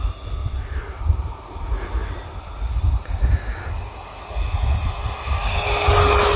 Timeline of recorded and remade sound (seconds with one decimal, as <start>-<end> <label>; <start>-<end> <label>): 0.0-0.4 recorded; 0.4-1.0 remade; 1.0-6.4 recorded